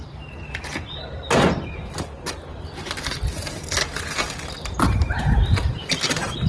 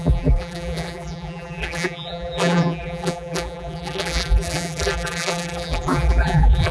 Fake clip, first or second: second